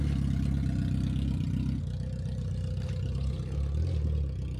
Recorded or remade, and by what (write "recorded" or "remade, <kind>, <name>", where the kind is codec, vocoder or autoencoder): recorded